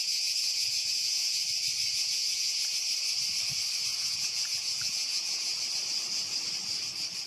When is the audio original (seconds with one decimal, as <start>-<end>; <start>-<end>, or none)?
1.4-1.9; 2.7-3.9; 5.6-7.3